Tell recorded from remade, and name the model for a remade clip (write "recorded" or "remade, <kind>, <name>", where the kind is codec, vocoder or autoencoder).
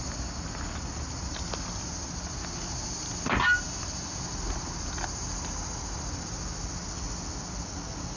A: recorded